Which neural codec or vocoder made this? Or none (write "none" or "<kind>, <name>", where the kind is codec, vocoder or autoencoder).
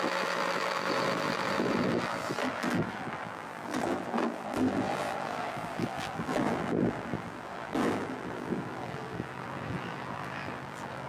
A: vocoder, BigVGAN v2